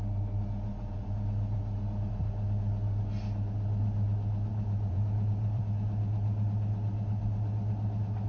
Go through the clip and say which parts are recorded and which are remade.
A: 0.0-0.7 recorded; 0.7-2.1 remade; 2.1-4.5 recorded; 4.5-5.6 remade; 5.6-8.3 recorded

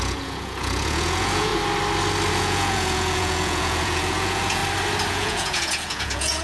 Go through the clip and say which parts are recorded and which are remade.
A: 0.0-1.5 remade; 1.5-2.3 recorded; 2.3-4.6 remade; 4.6-5.1 recorded; 5.1-6.4 remade

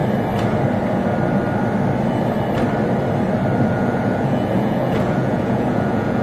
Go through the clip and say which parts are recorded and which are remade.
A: 0.0-3.7 recorded; 3.7-6.2 remade

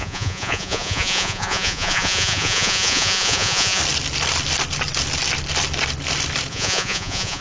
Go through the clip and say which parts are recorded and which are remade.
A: 0.0-3.8 remade; 3.8-6.5 recorded; 6.5-7.4 remade

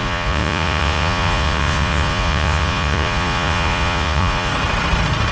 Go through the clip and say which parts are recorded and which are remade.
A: 0.0-4.5 remade; 4.5-5.3 recorded

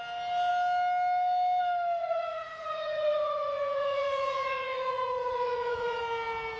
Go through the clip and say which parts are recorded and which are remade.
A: 0.0-2.0 recorded; 2.0-6.0 remade; 6.0-6.6 recorded

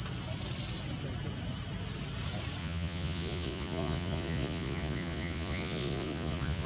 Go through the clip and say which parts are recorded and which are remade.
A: 0.0-2.6 recorded; 2.6-6.7 remade